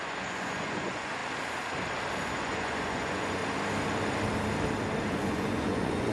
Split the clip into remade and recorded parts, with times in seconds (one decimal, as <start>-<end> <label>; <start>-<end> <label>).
0.0-1.2 remade; 1.2-2.2 recorded; 2.2-3.4 remade; 3.4-5.1 recorded; 5.1-6.1 remade